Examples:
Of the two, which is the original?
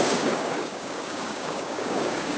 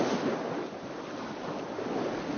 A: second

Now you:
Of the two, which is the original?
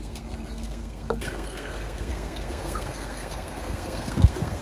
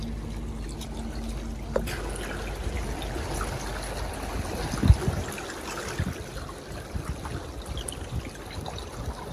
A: second